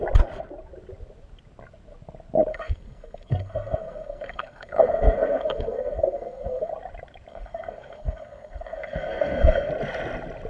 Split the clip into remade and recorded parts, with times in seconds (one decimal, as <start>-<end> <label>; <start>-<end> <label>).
0.0-2.5 recorded; 2.5-6.7 remade; 6.7-7.3 recorded; 7.3-9.7 remade; 9.7-10.5 recorded